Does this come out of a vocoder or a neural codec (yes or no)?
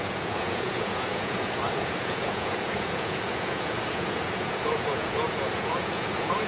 yes